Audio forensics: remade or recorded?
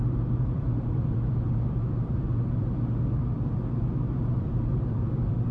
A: remade